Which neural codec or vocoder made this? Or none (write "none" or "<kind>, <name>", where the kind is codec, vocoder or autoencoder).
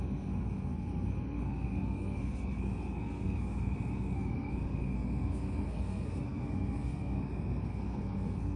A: codec, SNAC